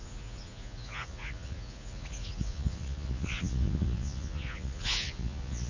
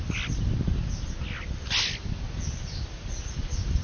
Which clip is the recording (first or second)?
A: second